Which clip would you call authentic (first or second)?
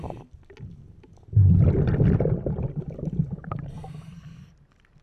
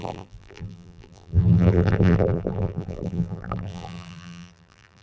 first